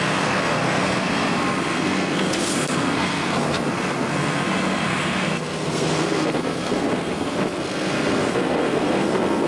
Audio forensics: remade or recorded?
remade